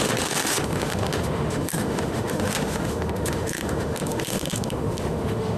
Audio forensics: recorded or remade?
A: remade